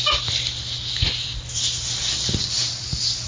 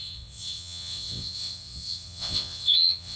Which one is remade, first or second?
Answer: second